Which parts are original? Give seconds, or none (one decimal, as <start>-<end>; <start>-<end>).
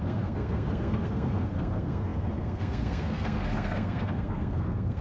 none